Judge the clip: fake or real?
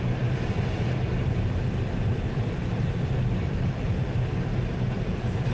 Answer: real